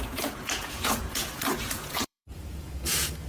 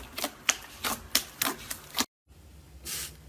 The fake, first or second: first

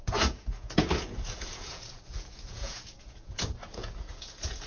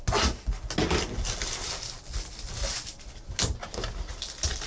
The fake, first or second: first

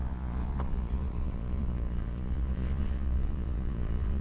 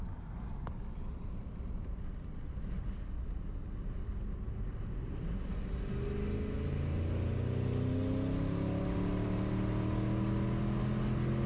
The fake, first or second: first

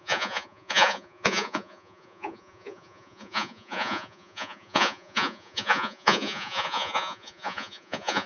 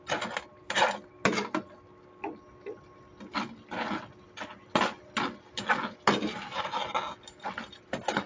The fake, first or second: first